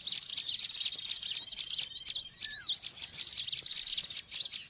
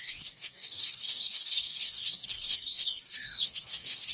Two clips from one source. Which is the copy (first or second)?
second